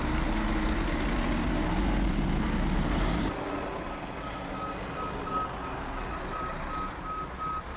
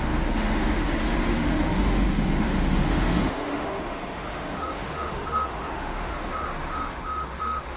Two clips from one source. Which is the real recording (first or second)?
first